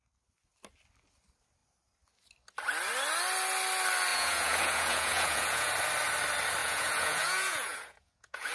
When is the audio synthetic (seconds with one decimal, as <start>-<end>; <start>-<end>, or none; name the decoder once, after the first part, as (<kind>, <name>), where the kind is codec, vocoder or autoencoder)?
4.1-5.7 (vocoder, Vocos); 6.6-8.5